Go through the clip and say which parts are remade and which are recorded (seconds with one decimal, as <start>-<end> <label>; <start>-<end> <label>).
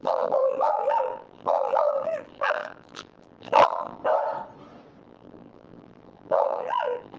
0.0-4.0 remade; 4.0-5.0 recorded; 5.0-7.2 remade